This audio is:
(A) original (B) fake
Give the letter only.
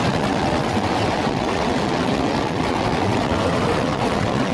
B